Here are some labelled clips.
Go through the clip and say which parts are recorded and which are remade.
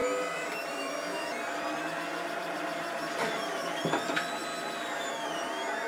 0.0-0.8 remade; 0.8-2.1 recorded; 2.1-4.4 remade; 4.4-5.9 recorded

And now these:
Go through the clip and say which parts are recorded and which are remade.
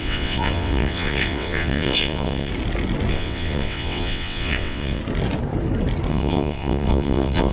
0.0-2.5 remade; 2.5-3.1 recorded; 3.1-5.0 remade; 5.0-6.1 recorded; 6.1-7.5 remade